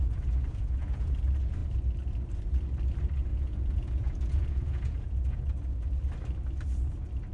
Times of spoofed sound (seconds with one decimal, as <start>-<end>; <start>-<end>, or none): 0.0-1.1; 3.3-5.4